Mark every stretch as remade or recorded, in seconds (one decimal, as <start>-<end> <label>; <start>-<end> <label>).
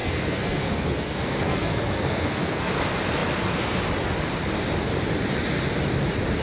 0.0-2.7 remade; 2.7-6.4 recorded